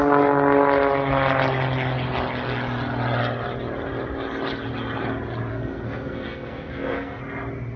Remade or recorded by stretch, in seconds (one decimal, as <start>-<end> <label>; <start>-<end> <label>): 0.0-5.5 recorded; 5.5-7.2 remade; 7.2-7.8 recorded